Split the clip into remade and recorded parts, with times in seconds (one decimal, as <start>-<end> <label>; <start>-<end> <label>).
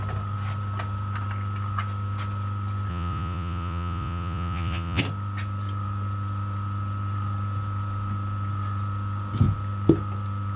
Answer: 0.0-2.9 recorded; 2.9-5.0 remade; 5.0-10.6 recorded